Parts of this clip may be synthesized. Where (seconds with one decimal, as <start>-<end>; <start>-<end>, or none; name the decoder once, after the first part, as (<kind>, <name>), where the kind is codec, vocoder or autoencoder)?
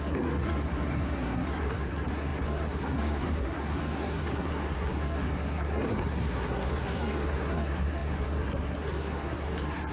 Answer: 0.0-9.9 (codec, SNAC)